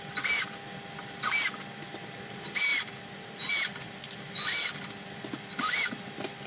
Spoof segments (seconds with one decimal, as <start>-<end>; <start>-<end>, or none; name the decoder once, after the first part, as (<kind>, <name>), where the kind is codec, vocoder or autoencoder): none